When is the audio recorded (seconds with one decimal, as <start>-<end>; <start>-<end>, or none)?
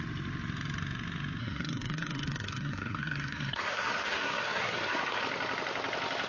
0.0-1.4; 5.2-6.3